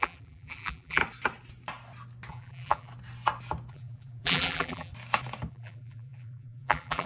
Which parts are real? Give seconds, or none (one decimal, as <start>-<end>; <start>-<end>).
1.0-2.3; 2.9-3.7; 4.9-5.5